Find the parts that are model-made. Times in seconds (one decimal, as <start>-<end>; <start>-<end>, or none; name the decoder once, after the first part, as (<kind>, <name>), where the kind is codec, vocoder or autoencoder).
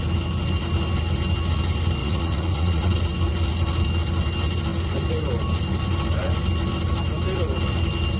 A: 2.0-3.0 (vocoder, Vocos)